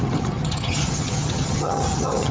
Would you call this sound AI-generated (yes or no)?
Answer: yes